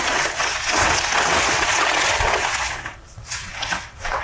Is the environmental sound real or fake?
fake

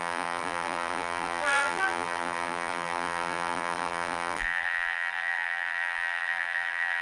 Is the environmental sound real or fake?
fake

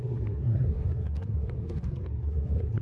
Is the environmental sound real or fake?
fake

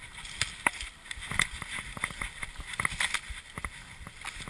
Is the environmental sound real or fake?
real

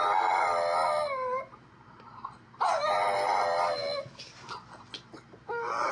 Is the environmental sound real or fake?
real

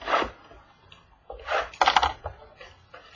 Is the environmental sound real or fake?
real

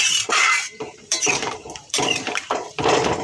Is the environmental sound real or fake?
fake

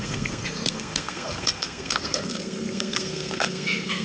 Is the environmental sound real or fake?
fake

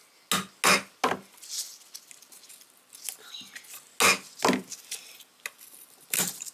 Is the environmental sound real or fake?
real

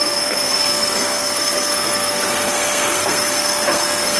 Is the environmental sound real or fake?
fake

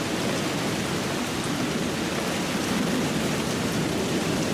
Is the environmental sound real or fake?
real